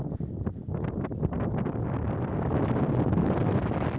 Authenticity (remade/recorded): recorded